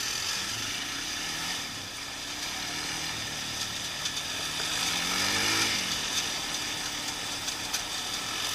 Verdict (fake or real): real